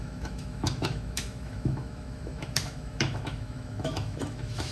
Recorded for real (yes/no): no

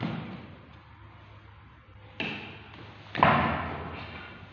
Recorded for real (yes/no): yes